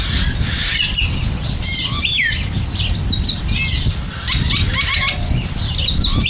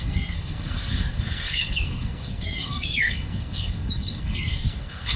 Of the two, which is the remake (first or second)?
second